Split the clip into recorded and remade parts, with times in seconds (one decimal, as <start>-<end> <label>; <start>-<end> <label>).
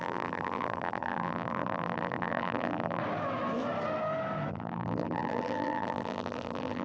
0.0-3.0 remade; 3.0-4.5 recorded; 4.5-6.8 remade